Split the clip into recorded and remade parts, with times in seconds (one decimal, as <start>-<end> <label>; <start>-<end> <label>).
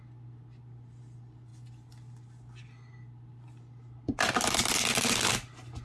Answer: 0.0-5.8 recorded